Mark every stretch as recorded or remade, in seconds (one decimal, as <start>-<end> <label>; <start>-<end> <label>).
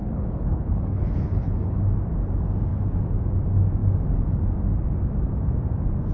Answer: 0.0-1.8 remade; 1.8-6.1 recorded